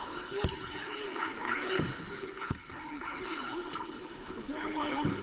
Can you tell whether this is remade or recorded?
remade